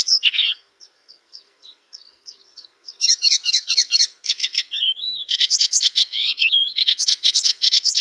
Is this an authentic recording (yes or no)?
no